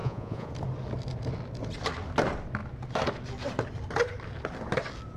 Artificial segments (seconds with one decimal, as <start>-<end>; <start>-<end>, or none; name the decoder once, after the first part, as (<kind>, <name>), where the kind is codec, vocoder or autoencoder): 0.0-0.5 (vocoder, Vocos)